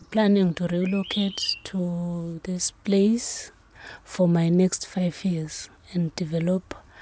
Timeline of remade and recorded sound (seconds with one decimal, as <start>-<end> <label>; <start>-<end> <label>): 0.0-4.2 remade; 4.2-7.0 recorded